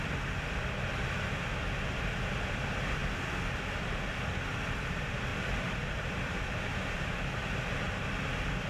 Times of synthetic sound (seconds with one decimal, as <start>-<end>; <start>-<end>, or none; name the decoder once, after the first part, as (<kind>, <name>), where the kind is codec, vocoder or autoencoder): 5.3-7.8 (vocoder, BigVGAN v2)